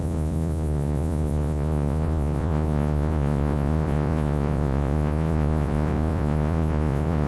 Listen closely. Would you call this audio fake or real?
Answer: fake